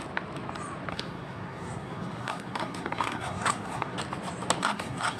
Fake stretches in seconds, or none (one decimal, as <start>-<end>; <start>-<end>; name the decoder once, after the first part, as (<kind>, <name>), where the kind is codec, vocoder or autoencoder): 0.9-4.0 (codec, SNAC); 4.6-5.2